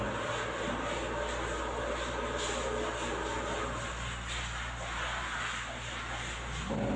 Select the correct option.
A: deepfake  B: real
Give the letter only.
B